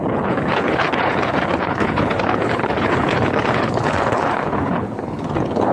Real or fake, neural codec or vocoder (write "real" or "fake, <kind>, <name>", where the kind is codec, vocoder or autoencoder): fake, codec, HILCodec